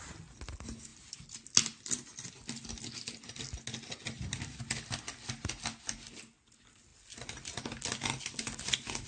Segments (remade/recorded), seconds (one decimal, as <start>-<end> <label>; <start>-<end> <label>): 0.0-9.1 recorded